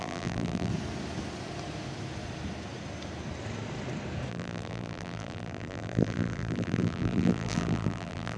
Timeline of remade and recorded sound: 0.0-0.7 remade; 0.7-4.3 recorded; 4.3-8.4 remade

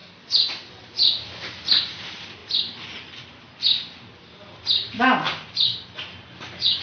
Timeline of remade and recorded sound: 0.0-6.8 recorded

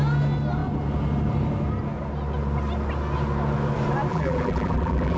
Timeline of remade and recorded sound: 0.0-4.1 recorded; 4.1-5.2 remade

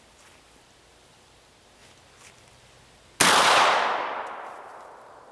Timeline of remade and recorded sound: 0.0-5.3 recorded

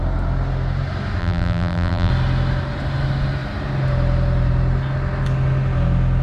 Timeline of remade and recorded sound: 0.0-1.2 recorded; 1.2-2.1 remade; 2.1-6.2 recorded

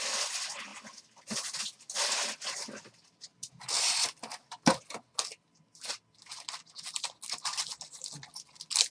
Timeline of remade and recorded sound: 0.0-8.9 recorded

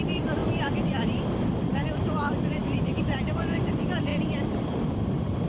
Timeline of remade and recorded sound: 0.0-5.5 remade

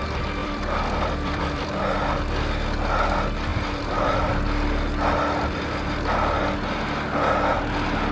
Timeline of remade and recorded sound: 0.0-0.4 recorded; 0.4-1.8 remade; 1.8-3.5 recorded; 3.5-4.3 remade; 4.3-8.1 recorded